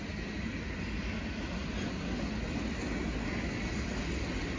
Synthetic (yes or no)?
no